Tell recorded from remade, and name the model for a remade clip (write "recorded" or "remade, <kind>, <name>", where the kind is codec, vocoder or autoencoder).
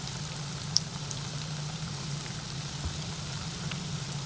recorded